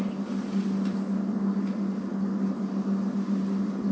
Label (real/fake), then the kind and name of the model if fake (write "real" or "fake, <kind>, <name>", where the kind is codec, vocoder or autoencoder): real